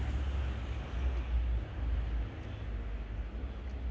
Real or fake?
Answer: real